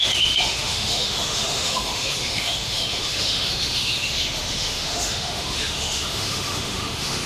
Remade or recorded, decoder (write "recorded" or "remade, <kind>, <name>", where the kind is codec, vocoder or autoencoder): remade, autoencoder, DAC-VAE